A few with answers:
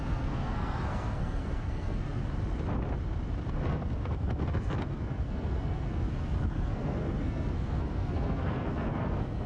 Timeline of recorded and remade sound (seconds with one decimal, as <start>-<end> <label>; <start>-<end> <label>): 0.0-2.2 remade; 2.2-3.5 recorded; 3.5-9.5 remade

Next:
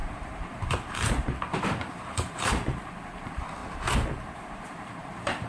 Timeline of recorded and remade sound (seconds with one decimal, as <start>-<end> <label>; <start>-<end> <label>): 0.0-3.6 remade; 3.6-4.4 recorded; 4.4-5.5 remade

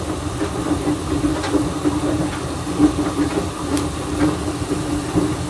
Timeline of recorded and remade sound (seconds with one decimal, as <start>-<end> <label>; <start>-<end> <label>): 0.0-5.5 recorded